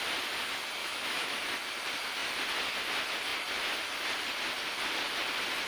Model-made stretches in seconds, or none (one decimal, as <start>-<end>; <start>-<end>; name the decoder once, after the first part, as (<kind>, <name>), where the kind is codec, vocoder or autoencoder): 0.8-1.4 (autoencoder, DAC-VAE)